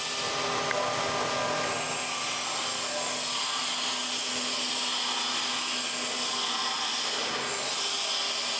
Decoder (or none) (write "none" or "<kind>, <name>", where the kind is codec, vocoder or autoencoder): none